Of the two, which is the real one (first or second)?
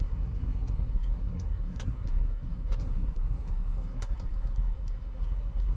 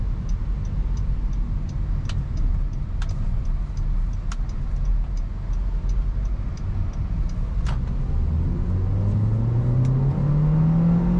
second